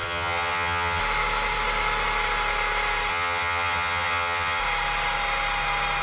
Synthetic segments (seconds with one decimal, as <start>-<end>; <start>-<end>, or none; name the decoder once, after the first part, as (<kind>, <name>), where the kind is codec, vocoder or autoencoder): 0.0-1.0 (vocoder, HiFi-GAN); 3.1-4.6